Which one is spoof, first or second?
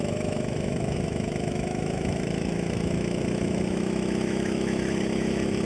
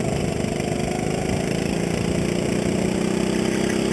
first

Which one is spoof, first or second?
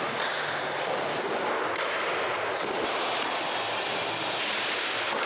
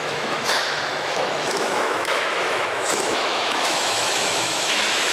second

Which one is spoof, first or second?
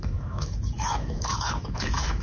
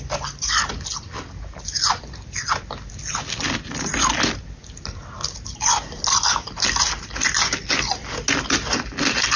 first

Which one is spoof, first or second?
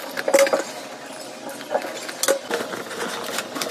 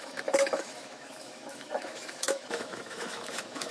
second